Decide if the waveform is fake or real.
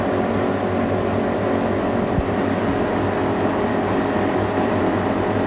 real